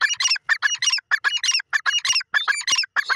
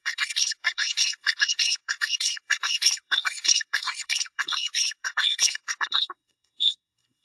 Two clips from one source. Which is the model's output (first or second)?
second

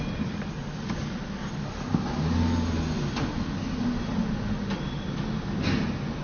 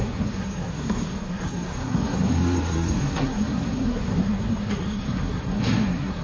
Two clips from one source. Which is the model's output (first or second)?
second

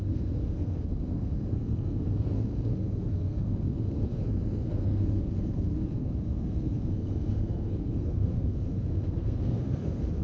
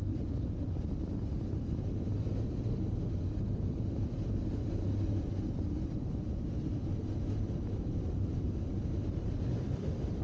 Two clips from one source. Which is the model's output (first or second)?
first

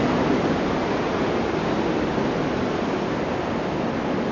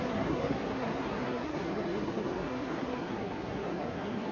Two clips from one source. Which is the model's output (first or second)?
second